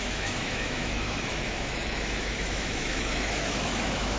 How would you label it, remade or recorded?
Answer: remade